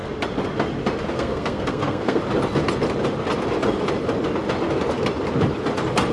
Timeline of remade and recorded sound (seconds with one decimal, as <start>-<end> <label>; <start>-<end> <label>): 0.0-1.1 recorded; 1.1-2.2 remade; 2.2-6.1 recorded